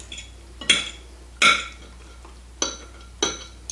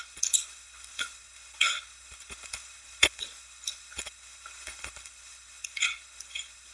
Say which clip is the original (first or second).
first